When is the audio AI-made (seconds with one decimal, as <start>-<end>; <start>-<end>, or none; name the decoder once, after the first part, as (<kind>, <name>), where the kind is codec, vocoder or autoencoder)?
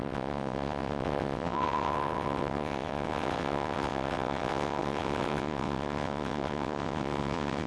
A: 0.0-7.7 (vocoder, WaveNeXt)